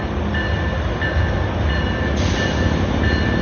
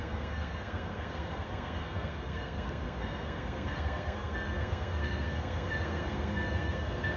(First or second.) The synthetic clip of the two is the second